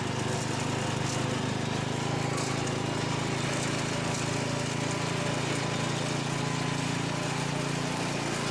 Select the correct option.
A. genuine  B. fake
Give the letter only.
A